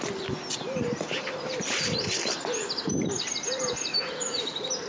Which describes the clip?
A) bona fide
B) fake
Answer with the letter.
A